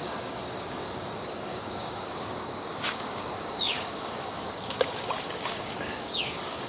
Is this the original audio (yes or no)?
no